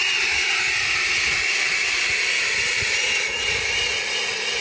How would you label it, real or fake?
real